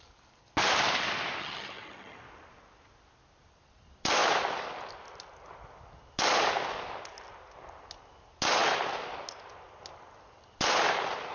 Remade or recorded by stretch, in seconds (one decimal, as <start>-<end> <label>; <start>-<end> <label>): 0.0-1.4 recorded; 1.4-2.2 remade; 2.2-11.3 recorded